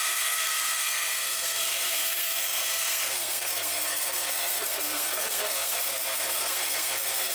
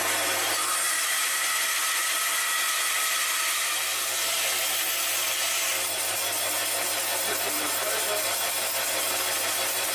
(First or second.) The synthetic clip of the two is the first